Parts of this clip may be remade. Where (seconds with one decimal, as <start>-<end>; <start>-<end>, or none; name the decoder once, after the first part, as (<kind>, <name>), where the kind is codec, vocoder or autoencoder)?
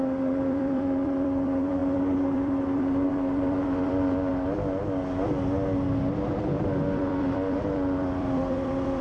0.0-4.3 (vocoder, BigVGAN v2); 6.6-9.0